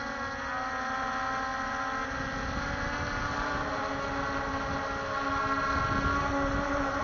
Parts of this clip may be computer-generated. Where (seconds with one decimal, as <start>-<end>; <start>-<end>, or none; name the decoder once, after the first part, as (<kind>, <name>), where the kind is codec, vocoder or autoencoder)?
none